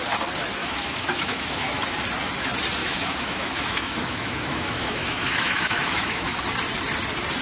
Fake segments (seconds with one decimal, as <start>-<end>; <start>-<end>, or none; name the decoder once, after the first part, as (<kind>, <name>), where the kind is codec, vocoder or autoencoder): 0.6-1.8 (autoencoder, DAC-VAE); 2.8-6.4